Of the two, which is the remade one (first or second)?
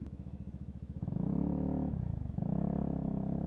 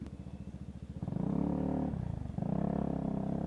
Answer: first